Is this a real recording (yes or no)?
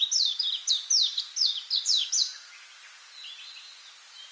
yes